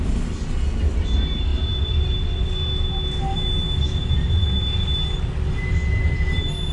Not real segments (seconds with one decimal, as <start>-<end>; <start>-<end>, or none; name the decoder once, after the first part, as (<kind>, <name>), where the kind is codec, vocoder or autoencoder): none